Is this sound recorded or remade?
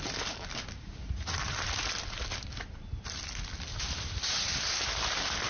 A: recorded